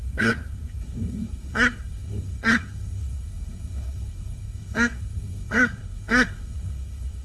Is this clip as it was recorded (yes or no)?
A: no